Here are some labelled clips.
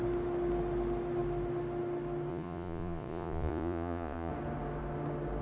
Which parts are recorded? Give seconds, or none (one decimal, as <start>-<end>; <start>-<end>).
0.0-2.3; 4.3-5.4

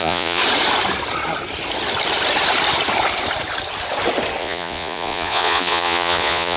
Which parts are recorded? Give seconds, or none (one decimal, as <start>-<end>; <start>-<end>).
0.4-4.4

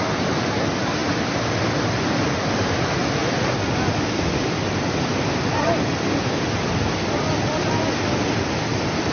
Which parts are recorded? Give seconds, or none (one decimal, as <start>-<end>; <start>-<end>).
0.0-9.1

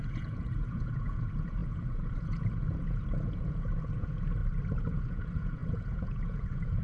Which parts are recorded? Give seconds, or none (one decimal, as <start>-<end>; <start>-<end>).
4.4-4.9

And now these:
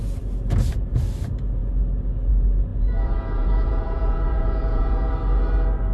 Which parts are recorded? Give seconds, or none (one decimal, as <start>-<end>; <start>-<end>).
0.0-2.7; 5.1-5.9

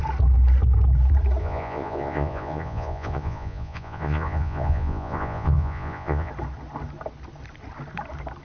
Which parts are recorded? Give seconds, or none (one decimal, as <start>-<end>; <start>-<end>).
0.0-1.4; 6.3-8.4